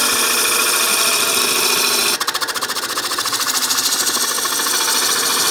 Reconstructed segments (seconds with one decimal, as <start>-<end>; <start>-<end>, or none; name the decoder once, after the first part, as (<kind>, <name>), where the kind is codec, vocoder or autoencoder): 2.0-2.8 (vocoder, BigVGAN v2)